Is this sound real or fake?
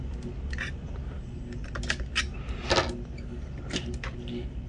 real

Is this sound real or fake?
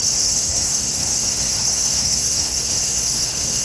fake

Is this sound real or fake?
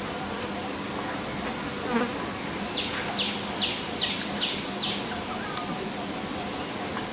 real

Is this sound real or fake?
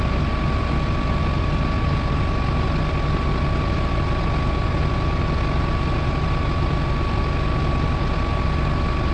real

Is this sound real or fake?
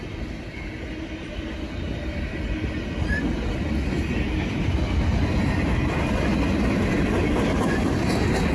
real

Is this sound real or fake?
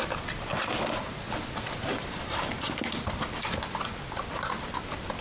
real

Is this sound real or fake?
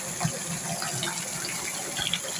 real